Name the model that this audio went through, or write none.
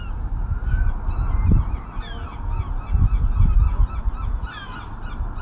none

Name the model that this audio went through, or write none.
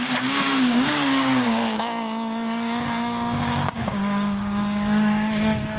codec, DAC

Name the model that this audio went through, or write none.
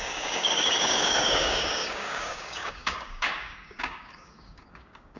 codec, DAC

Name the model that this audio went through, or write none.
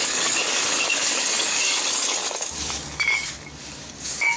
codec, DAC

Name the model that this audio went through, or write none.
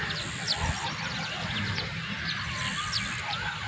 none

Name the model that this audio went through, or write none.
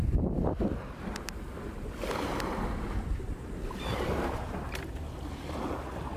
none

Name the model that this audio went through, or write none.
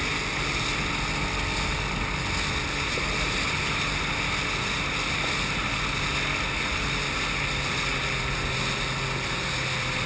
none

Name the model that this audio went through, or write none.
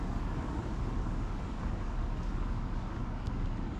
codec, DAC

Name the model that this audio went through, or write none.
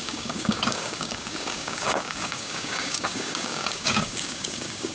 codec, DAC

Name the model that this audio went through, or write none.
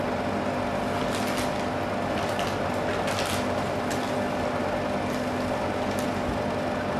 none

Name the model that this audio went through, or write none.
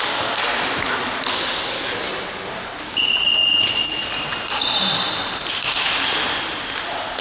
none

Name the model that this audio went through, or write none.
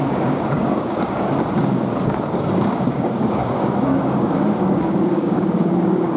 codec, DAC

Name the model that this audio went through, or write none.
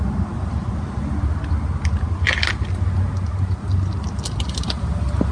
none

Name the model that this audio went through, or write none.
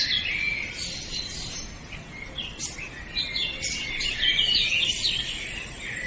none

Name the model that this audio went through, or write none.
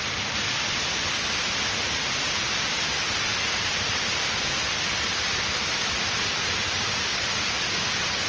none